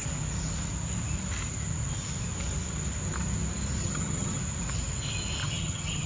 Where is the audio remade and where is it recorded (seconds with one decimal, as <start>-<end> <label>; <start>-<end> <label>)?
0.0-3.8 recorded; 3.8-4.4 remade; 4.4-5.4 recorded; 5.4-6.1 remade